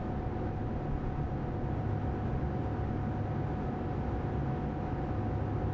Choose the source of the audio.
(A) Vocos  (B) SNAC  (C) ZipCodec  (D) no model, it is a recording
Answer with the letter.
D